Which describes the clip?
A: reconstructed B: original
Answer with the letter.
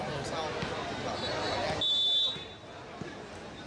B